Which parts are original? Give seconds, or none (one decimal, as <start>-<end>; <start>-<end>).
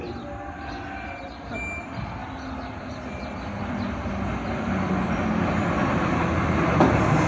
0.0-7.3